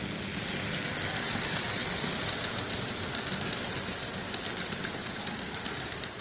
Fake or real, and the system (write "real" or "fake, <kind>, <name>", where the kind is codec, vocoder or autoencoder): real